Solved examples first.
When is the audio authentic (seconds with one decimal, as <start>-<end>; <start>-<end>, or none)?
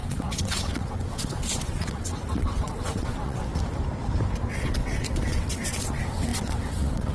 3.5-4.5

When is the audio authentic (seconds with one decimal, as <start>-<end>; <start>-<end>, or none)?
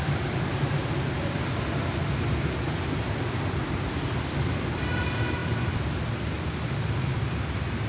0.0-7.9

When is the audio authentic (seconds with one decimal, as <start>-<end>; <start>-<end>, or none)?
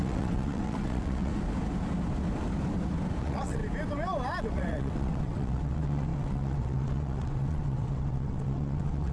1.3-3.2; 3.6-4.4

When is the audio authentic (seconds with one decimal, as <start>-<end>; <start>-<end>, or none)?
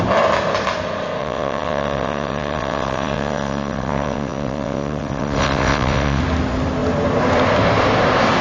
0.0-1.2; 6.2-8.4